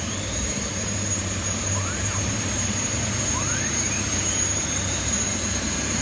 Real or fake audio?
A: fake